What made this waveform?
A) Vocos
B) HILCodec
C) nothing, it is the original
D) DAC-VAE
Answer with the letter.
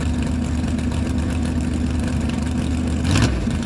C